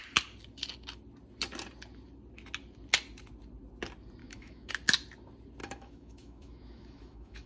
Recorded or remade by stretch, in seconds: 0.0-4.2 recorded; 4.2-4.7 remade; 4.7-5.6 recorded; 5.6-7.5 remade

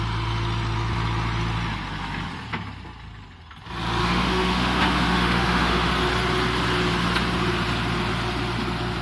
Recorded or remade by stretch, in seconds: 0.0-4.0 recorded; 4.0-5.9 remade; 5.9-9.0 recorded

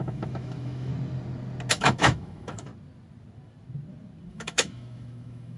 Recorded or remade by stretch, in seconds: 0.0-0.9 remade; 0.9-1.7 recorded; 1.7-2.7 remade; 2.7-4.3 recorded; 4.3-5.6 remade

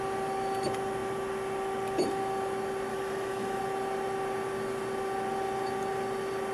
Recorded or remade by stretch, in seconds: 0.0-2.9 recorded; 2.9-3.6 remade; 3.6-6.5 recorded

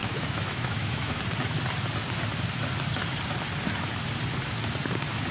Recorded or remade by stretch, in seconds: 0.0-1.2 remade; 1.2-5.3 recorded

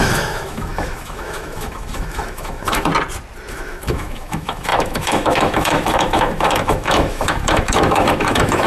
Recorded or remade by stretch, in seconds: 0.0-2.9 remade; 2.9-3.5 recorded; 3.5-8.7 remade

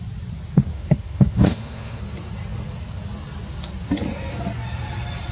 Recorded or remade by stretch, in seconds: 0.0-0.7 recorded; 0.7-2.0 remade; 2.0-5.3 recorded